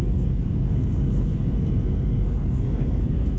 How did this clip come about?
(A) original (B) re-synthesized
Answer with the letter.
B